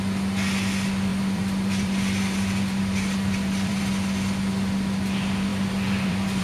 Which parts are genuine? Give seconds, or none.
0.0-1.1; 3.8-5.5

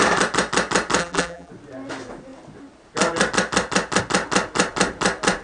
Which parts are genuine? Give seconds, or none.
0.0-1.0; 1.5-5.4

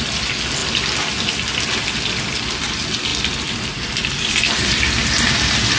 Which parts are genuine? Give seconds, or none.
0.0-5.8

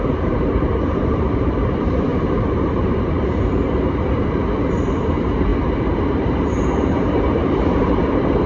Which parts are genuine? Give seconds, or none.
none

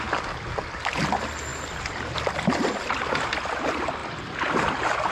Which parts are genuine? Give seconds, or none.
0.0-1.5; 2.3-4.0

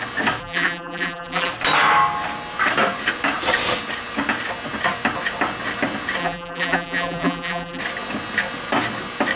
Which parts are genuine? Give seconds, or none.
0.0-0.4; 1.5-6.2; 7.8-9.4

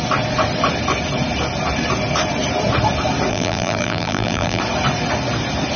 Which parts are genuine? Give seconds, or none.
0.0-3.3; 4.6-5.8